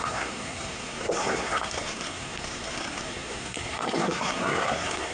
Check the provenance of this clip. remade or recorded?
remade